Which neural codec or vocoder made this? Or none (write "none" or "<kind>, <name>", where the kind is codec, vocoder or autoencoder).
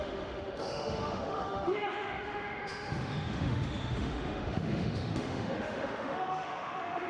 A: autoencoder, DAC-VAE